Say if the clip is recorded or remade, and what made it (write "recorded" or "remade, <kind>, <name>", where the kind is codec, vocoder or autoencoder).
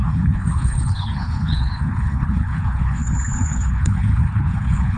remade, codec, HILCodec